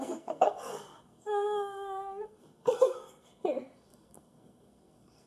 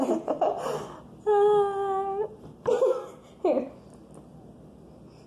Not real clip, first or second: first